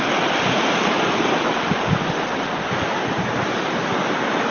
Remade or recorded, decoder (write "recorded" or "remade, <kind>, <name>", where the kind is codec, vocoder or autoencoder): recorded